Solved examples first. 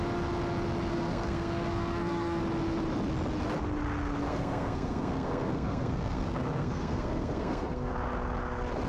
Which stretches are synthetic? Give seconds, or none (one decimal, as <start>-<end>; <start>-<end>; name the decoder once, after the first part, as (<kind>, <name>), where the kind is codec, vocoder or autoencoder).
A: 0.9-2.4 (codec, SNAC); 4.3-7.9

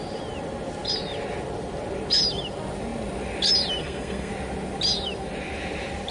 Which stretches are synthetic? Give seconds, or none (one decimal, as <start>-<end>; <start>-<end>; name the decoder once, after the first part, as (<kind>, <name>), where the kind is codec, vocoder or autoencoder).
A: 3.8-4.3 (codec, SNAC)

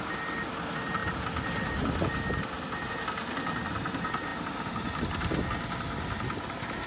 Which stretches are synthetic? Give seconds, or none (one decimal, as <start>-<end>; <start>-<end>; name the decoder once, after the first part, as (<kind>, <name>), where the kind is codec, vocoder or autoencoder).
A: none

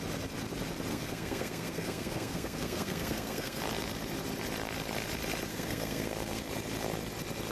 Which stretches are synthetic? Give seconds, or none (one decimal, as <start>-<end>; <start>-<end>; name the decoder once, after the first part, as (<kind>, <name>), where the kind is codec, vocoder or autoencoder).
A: 0.9-3.6 (codec, SNAC); 5.5-6.4

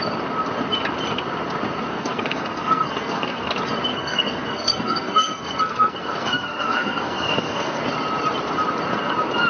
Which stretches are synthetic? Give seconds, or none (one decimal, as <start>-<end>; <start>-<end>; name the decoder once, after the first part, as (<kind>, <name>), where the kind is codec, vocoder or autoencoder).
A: 1.9-3.5 (codec, SNAC); 3.9-7.8